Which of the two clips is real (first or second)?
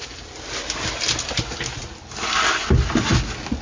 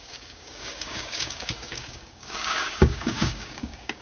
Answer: first